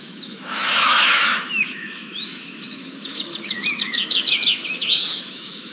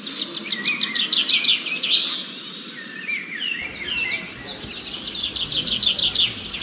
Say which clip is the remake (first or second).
first